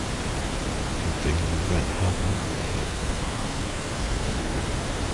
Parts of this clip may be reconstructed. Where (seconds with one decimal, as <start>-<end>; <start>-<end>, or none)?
1.9-4.6

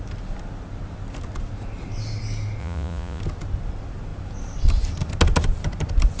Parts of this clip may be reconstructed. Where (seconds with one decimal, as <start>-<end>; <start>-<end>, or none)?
2.6-3.2

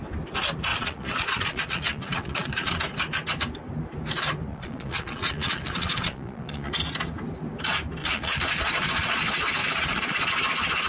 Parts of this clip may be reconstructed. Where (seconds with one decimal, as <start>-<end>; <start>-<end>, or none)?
0.7-2.8; 4.5-6.7; 8.0-9.2; 9.6-10.3

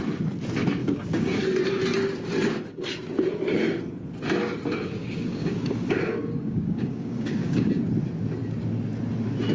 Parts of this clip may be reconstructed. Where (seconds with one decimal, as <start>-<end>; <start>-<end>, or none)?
0.8-1.4; 5.0-7.7